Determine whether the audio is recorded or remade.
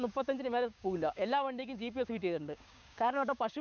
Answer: remade